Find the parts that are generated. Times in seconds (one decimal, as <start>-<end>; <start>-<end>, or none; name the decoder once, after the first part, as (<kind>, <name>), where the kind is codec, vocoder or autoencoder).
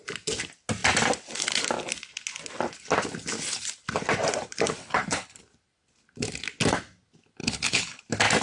4.8-5.4 (codec, HILCodec); 7.4-8.0